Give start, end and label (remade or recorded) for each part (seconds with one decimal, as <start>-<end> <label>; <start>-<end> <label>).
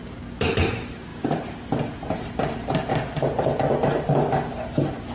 0.0-1.1 recorded; 1.1-2.9 remade; 2.9-3.8 recorded; 3.8-4.3 remade; 4.3-5.1 recorded